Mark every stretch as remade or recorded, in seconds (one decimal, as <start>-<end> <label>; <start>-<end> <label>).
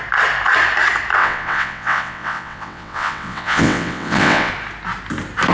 0.0-1.2 recorded; 1.2-4.5 remade; 4.5-5.5 recorded